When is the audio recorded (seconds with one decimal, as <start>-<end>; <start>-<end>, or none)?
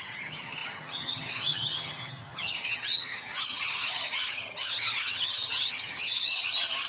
none